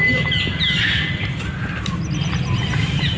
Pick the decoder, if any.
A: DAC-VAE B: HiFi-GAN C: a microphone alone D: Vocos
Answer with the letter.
C